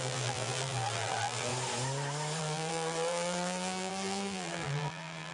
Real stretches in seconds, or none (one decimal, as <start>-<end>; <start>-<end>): 1.5-2.4